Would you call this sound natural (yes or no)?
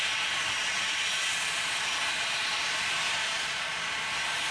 yes